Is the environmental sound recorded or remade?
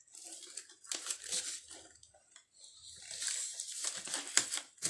recorded